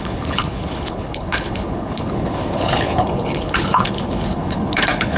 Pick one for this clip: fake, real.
fake